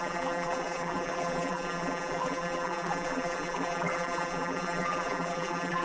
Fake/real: fake